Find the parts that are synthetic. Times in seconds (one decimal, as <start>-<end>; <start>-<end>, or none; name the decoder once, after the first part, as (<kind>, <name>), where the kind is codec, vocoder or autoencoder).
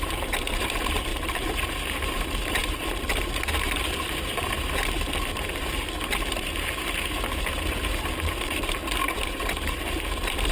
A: 0.0-10.5 (vocoder, BigVGAN v2)